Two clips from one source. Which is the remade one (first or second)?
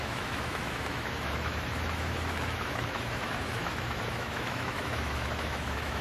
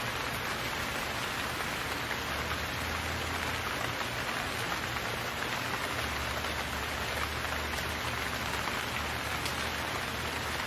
first